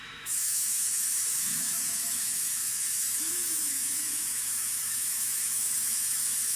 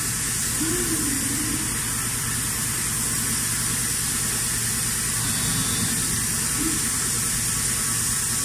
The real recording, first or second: second